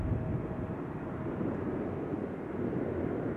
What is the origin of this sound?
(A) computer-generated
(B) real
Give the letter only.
B